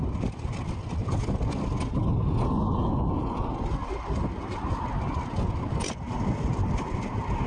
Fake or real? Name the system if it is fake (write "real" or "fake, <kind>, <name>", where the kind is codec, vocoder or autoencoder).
real